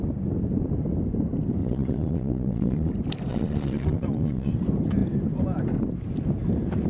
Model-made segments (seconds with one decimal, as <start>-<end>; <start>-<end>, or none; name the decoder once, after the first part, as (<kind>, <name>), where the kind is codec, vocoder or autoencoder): 1.6-2.9 (vocoder, Vocos); 3.3-4.5